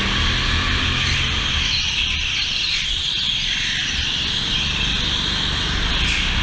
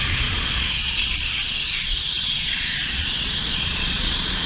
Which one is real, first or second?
first